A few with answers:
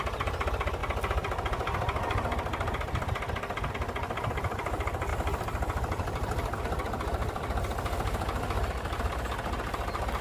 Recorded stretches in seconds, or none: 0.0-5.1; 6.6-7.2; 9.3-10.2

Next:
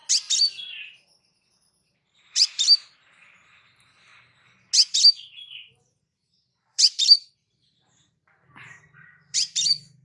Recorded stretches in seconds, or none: 0.0-1.5; 4.1-5.9

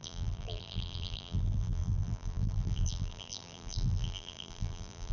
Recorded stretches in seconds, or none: none

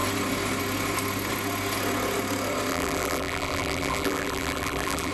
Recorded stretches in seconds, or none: 0.0-2.7

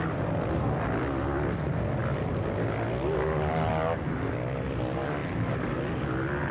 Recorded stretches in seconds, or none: 0.0-5.2; 5.7-6.5

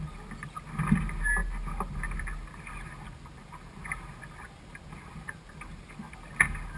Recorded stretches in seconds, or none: 0.0-6.8

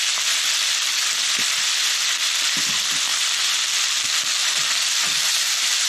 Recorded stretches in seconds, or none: 0.0-4.4